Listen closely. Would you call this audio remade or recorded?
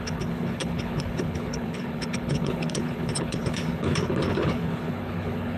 remade